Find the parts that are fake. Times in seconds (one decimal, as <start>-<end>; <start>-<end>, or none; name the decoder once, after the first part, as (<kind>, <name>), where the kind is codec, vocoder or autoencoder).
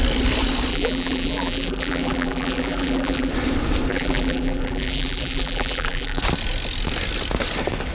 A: 0.7-3.3 (vocoder, BigVGAN v2); 3.9-6.2